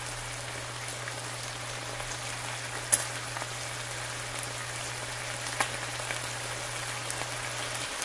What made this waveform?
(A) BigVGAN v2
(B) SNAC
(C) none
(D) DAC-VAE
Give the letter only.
C